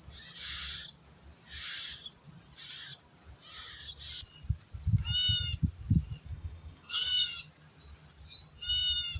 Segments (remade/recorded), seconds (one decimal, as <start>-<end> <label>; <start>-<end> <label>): 0.0-6.3 recorded; 6.3-7.4 remade; 7.4-9.2 recorded